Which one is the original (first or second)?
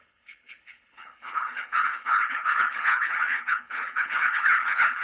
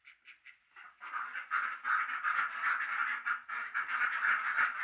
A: second